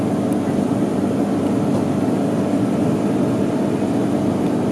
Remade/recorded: recorded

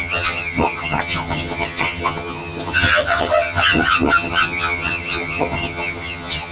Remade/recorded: remade